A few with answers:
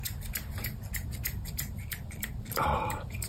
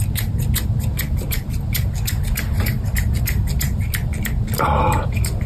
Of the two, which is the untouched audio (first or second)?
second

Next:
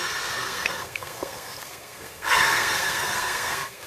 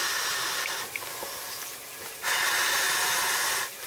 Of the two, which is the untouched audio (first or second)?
second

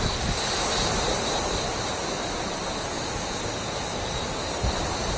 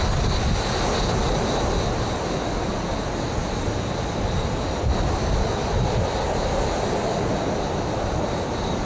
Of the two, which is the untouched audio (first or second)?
second